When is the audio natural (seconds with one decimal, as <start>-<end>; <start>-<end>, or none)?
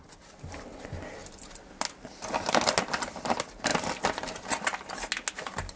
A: 0.0-5.8